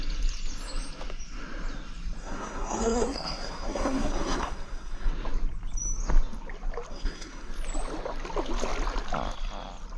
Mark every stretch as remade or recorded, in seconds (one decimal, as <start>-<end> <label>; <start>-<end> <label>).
0.0-2.2 recorded; 2.2-5.1 remade; 5.1-6.9 recorded; 6.9-7.5 remade; 7.5-10.0 recorded